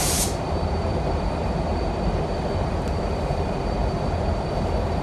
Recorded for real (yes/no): no